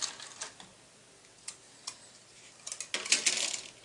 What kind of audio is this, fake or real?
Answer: real